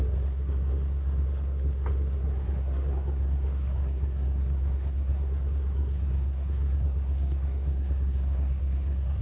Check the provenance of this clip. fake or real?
fake